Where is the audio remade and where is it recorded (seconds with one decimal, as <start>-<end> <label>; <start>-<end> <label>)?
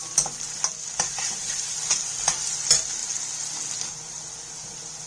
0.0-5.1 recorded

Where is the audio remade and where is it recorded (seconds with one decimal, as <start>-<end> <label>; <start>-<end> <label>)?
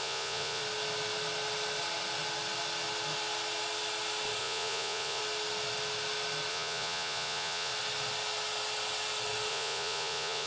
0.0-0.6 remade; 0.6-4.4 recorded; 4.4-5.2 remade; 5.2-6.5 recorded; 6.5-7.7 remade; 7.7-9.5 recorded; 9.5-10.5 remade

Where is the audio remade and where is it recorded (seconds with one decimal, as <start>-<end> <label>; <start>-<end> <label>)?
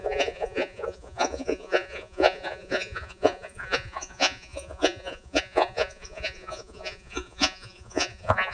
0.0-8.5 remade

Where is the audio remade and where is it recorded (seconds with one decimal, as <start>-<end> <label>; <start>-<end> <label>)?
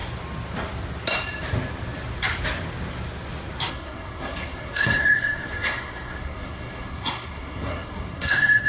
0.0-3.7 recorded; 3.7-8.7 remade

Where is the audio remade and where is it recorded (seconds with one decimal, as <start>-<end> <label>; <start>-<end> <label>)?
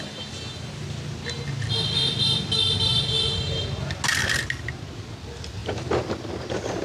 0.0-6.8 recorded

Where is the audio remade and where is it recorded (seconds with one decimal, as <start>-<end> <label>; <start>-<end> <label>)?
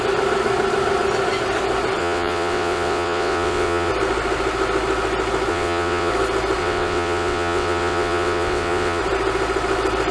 0.0-2.0 recorded; 2.0-3.9 remade; 3.9-5.5 recorded; 5.5-6.1 remade; 6.1-6.6 recorded; 6.6-9.0 remade; 9.0-10.1 recorded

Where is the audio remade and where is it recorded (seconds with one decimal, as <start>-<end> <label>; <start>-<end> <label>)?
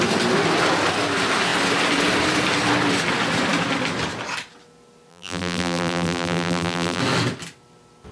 0.0-5.1 recorded; 5.1-7.0 remade; 7.0-8.1 recorded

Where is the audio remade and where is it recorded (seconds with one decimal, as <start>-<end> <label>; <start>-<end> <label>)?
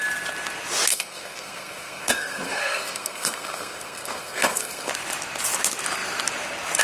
0.0-0.9 recorded; 0.9-4.9 remade; 4.9-6.8 recorded